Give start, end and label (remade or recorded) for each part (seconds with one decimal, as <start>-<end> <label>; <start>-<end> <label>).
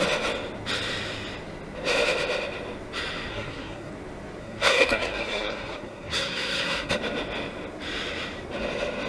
0.0-3.3 recorded; 3.3-3.9 remade; 3.9-4.4 recorded; 4.4-6.9 remade; 6.9-9.1 recorded